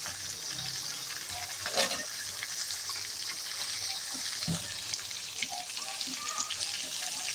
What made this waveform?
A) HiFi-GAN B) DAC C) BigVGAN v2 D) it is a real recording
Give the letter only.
D